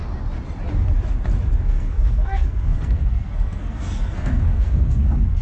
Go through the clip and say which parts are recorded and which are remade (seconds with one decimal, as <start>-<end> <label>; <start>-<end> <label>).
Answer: 0.0-1.6 recorded; 1.6-5.4 remade